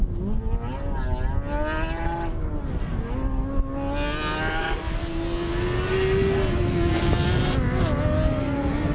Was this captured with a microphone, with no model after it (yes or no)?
yes